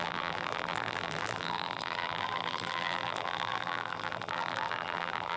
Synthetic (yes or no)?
yes